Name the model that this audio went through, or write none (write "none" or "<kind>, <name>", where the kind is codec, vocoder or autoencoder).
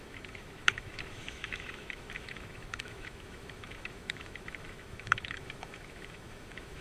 autoencoder, DAC-VAE